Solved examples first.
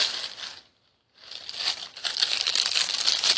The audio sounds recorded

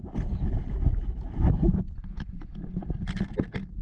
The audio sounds recorded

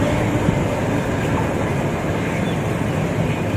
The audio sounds recorded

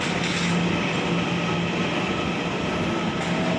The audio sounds recorded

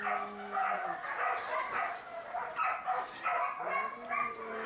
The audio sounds recorded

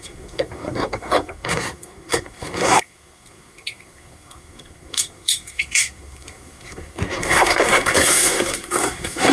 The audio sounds remade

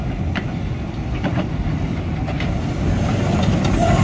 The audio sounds recorded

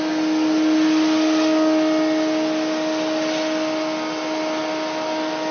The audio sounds recorded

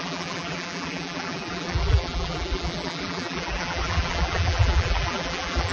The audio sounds remade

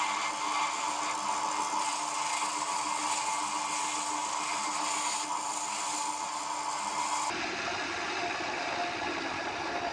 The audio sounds recorded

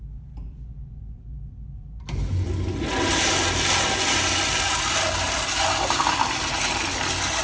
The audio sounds recorded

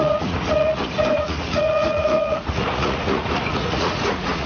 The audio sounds remade